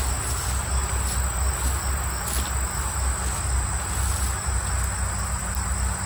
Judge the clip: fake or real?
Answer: real